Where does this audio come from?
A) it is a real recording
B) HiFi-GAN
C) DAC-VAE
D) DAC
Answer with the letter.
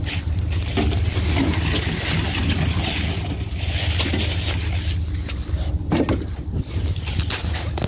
A